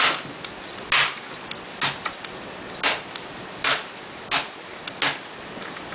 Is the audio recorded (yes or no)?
yes